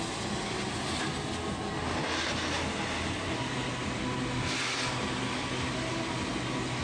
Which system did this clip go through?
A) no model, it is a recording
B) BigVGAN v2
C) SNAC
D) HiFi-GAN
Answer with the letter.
A